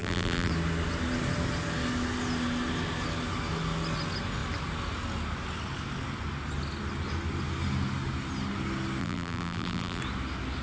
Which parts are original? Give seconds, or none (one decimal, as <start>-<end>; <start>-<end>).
0.5-9.0; 10.0-10.6